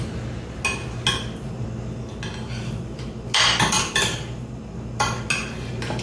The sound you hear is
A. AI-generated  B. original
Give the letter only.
B